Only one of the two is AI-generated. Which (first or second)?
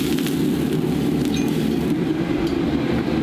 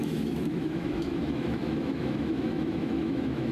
second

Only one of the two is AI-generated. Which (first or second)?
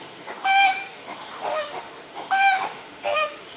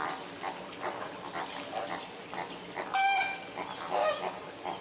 first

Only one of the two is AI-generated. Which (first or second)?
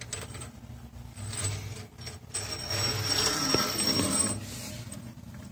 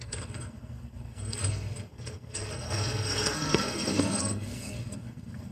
second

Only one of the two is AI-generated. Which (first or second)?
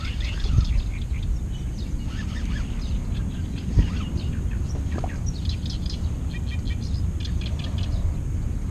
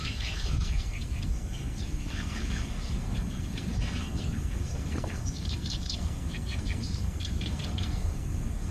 second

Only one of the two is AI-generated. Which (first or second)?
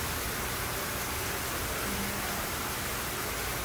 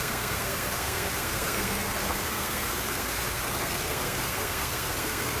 second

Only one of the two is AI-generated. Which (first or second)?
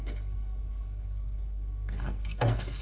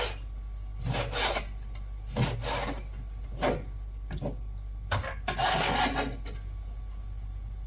first